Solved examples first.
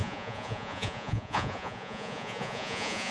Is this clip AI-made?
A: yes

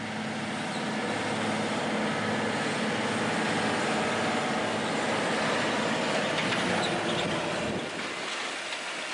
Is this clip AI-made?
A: no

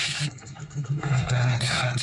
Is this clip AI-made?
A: yes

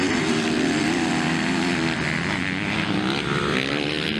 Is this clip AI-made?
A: no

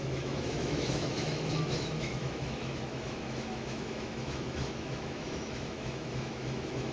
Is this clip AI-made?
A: yes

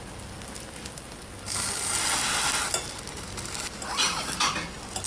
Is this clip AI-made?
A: no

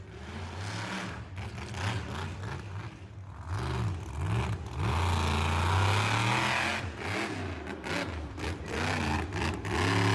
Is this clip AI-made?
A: no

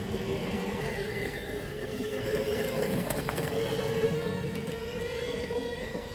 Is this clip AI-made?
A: yes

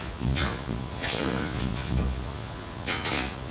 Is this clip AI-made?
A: yes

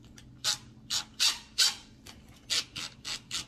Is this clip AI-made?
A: no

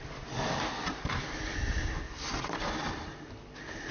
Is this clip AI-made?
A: no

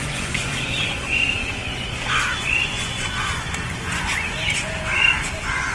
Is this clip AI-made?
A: yes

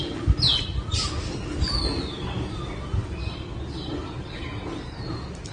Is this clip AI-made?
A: no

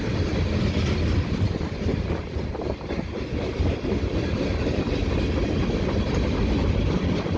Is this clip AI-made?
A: no